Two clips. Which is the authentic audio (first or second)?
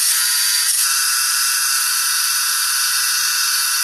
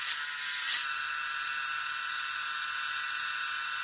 second